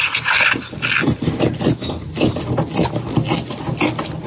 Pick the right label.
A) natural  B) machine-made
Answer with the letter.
A